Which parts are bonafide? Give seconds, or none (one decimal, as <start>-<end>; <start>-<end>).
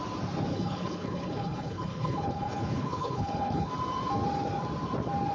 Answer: 0.0-0.5; 3.7-5.3